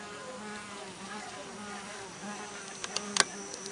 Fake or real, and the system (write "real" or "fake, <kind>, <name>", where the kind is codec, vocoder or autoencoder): real